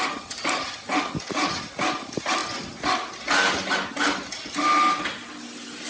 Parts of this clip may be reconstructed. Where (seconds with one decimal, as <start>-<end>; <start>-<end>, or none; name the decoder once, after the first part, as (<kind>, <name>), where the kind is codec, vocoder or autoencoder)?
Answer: none